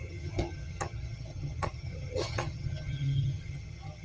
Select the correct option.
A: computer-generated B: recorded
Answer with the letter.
A